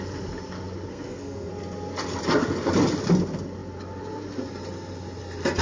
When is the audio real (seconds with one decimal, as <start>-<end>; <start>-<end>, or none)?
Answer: 0.0-0.9; 1.5-5.6